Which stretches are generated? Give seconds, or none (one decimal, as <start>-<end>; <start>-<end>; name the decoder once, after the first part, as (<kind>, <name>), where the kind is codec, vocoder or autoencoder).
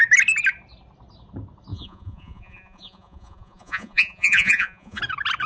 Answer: 1.7-5.0 (vocoder, Vocos)